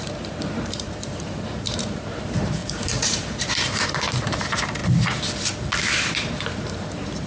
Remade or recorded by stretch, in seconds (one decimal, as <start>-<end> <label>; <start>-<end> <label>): 0.0-4.8 remade; 4.8-5.7 recorded; 5.7-7.3 remade